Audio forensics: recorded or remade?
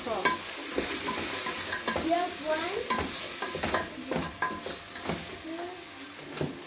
recorded